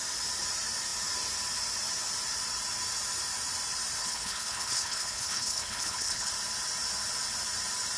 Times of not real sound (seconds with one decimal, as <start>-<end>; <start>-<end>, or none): 4.0-6.3